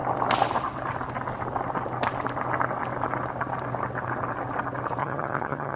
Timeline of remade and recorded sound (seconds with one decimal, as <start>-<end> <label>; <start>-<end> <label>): 0.0-5.0 recorded; 5.0-5.8 remade